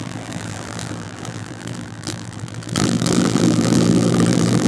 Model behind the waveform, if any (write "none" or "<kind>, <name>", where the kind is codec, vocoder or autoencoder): vocoder, BigVGAN v2